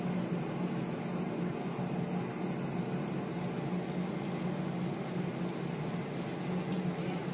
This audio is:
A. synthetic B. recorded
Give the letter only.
B